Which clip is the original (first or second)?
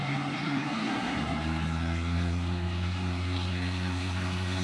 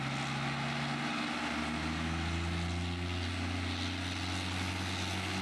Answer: second